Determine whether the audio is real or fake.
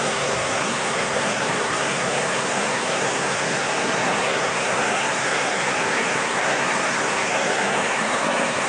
fake